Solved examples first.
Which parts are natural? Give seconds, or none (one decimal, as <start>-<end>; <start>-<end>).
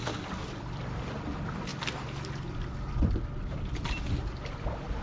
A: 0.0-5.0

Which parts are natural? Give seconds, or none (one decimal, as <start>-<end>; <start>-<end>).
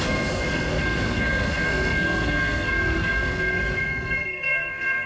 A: none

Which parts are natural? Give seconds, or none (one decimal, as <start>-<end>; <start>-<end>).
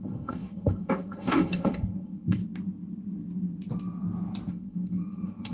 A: 2.4-4.5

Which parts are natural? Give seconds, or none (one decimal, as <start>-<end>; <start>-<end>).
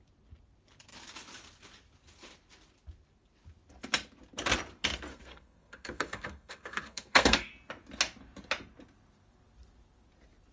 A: 0.0-5.1; 7.5-10.5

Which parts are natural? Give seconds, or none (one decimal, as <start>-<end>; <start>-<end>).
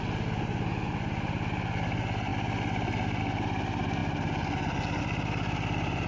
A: 0.0-6.1